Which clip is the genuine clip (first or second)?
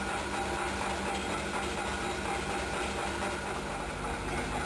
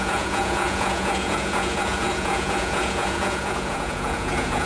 first